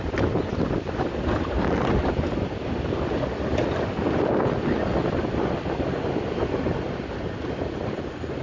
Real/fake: real